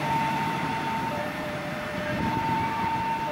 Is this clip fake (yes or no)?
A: yes